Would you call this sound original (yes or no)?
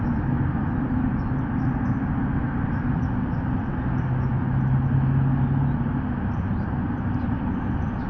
yes